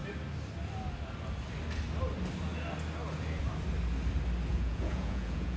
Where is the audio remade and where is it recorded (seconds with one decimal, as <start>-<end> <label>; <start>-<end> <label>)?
0.0-4.5 recorded; 4.5-5.6 remade